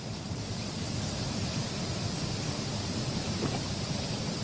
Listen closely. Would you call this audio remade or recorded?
recorded